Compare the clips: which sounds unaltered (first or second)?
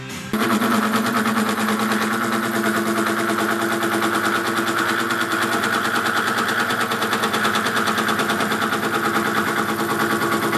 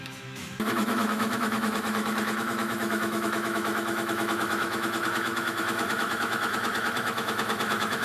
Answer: first